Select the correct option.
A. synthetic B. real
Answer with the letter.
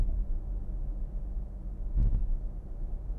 B